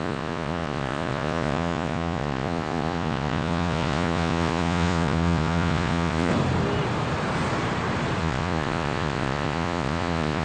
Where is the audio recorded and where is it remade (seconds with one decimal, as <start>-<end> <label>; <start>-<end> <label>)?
0.0-6.3 remade; 6.3-8.2 recorded; 8.2-10.4 remade